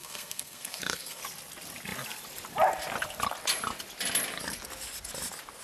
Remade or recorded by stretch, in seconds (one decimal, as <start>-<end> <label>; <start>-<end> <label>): 0.0-1.2 remade; 1.2-5.6 recorded